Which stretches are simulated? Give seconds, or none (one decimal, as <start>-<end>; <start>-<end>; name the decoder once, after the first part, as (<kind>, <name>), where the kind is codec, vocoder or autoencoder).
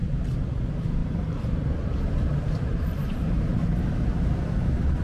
1.0-4.0 (vocoder, BigVGAN v2)